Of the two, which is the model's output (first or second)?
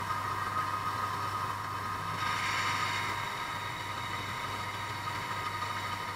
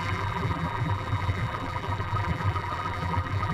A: second